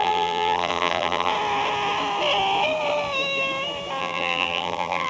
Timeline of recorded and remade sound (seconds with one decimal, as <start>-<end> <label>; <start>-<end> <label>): 0.0-1.3 remade; 1.3-4.0 recorded; 4.0-5.1 remade